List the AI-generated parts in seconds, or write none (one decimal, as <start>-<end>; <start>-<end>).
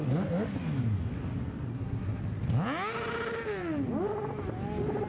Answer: 1.7-2.2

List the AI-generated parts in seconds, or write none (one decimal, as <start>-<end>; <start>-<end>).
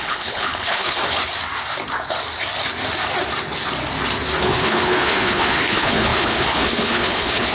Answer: 0.0-1.0; 4.4-7.5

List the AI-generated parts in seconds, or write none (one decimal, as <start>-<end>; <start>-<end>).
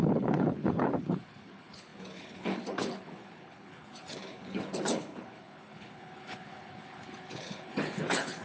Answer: 0.0-8.4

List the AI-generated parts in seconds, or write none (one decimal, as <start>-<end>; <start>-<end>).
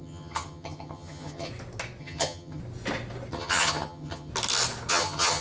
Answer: 0.0-1.5; 2.0-2.6; 3.3-4.3; 4.9-5.4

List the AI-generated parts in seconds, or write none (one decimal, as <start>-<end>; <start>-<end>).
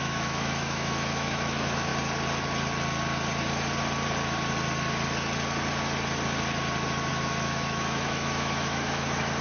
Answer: 0.0-1.9; 7.1-9.4